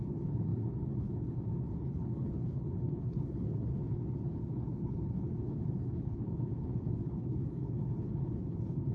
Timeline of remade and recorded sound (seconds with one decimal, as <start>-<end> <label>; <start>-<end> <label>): 0.0-8.9 remade